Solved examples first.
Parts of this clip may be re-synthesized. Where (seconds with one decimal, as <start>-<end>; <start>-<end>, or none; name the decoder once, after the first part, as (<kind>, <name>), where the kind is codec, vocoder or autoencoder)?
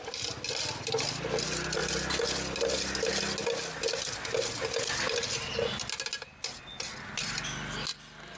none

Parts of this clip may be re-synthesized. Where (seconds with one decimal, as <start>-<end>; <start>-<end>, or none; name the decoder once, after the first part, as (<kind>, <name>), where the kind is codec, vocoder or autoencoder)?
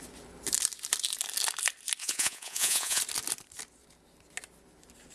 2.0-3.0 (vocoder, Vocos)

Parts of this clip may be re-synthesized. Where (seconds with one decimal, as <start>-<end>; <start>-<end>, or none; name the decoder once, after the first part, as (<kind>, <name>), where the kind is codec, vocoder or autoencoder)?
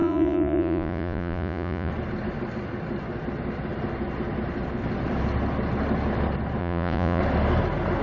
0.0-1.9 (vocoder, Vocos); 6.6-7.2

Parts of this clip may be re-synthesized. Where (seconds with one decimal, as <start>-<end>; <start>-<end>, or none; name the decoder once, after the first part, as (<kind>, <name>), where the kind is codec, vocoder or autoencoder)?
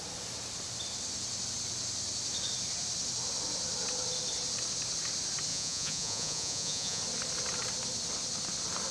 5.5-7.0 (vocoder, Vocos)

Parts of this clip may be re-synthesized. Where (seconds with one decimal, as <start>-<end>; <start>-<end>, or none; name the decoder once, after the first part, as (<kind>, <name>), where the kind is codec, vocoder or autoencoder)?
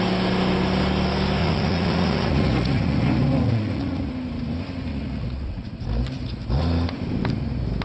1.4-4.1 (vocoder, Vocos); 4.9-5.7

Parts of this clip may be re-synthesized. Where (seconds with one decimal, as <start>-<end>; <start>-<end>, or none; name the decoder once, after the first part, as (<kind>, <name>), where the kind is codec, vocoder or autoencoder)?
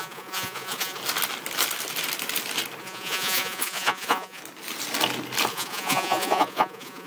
0.0-1.0 (vocoder, Vocos); 2.8-4.4; 5.5-7.1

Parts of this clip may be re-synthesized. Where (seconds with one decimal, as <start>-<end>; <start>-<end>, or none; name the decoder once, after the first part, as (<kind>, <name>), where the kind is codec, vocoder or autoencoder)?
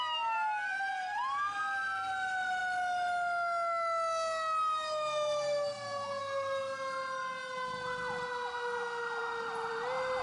none